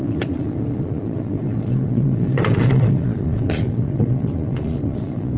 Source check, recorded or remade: remade